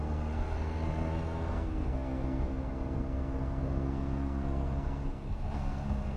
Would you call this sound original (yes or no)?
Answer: no